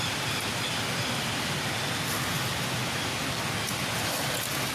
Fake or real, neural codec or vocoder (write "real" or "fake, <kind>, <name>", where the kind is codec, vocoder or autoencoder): real